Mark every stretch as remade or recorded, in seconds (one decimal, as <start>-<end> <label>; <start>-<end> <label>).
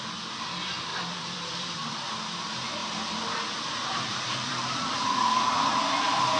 0.0-0.9 recorded; 0.9-1.9 remade; 1.9-2.8 recorded; 2.8-5.9 remade; 5.9-6.4 recorded